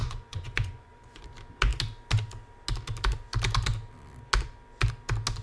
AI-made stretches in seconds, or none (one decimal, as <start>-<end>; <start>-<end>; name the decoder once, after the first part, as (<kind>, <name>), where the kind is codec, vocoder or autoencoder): 0.0-1.2 (vocoder, Vocos)